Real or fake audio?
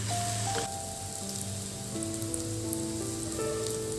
real